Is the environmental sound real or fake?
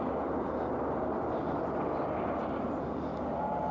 real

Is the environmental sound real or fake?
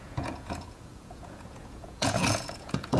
fake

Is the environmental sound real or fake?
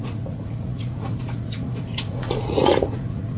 fake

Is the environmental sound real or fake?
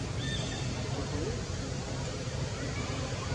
fake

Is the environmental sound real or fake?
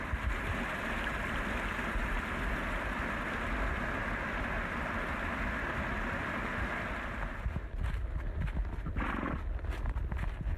real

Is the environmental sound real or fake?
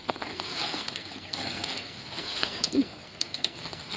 fake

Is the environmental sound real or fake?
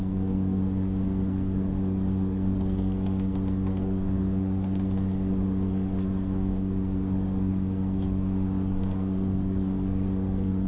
fake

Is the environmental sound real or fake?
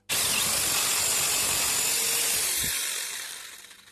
real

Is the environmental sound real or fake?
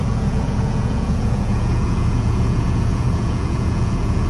fake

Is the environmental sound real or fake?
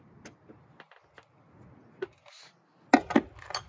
real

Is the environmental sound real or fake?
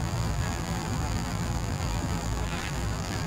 fake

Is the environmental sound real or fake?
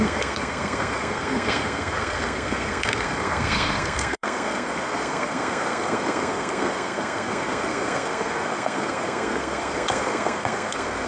fake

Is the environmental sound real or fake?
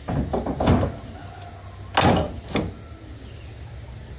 real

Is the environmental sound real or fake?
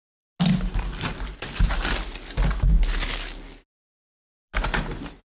real